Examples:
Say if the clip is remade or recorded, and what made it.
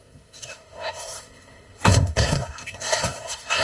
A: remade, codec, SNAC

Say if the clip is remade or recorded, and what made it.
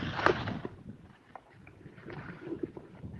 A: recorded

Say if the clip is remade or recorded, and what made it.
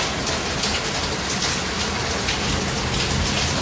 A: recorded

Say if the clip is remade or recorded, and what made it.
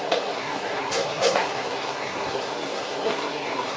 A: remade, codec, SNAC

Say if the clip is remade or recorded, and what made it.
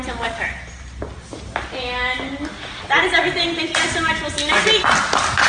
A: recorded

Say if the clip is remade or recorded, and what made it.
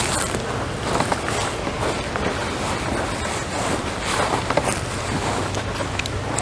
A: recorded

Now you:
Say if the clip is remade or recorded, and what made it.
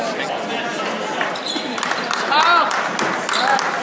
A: recorded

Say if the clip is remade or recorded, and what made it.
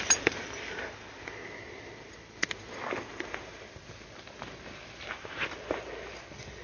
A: recorded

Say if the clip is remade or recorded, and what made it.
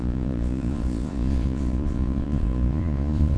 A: remade, vocoder, Vocos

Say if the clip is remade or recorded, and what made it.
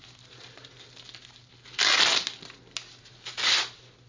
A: recorded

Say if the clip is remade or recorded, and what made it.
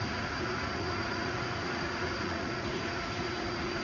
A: remade, vocoder, Vocos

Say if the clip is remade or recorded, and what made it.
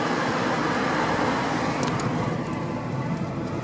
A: recorded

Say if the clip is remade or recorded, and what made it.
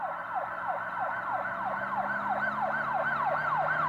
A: recorded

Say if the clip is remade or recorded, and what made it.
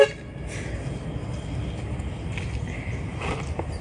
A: recorded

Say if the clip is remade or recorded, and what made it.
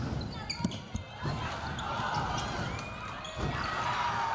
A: recorded